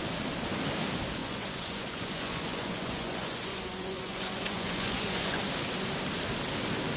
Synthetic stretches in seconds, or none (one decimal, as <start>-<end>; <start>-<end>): 1.2-5.4